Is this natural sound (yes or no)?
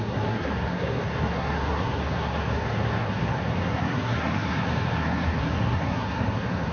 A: no